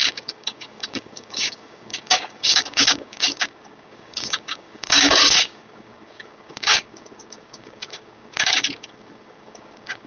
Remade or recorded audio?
remade